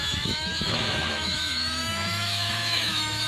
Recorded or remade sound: remade